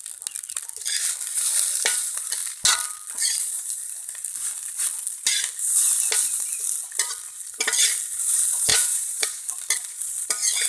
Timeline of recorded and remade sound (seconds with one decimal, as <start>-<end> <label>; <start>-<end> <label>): 0.0-8.7 recorded; 8.7-9.4 remade; 9.4-10.7 recorded